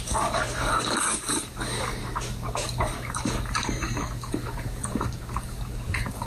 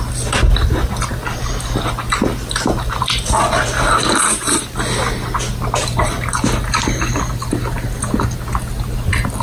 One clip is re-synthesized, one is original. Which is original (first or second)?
second